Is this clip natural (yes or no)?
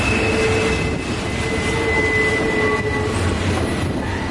yes